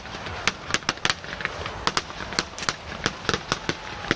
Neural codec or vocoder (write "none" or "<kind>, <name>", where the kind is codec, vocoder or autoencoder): none